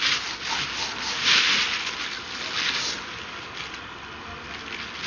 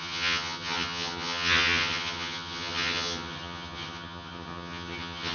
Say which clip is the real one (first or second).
first